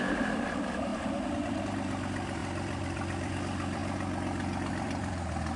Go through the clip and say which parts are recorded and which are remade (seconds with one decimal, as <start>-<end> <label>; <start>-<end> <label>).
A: 0.0-0.9 remade; 0.9-1.6 recorded; 1.6-3.8 remade; 3.8-4.7 recorded; 4.7-5.6 remade